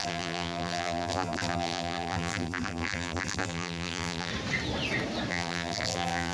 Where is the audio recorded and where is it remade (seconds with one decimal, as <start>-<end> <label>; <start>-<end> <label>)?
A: 0.0-4.3 remade; 4.3-5.3 recorded; 5.3-6.3 remade